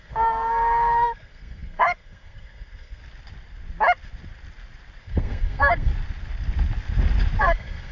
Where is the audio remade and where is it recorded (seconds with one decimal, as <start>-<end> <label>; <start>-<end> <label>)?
0.0-3.0 remade; 3.0-5.0 recorded; 5.0-5.9 remade; 5.9-7.4 recorded; 7.4-7.9 remade